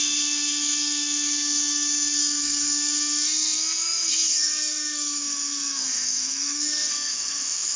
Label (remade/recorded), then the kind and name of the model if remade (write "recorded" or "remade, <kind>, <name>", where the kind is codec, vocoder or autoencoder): remade, codec, SNAC